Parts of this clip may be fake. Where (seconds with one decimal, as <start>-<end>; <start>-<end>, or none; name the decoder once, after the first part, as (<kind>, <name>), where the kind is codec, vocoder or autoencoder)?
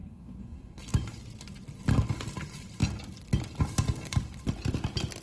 0.0-0.8 (codec, SNAC)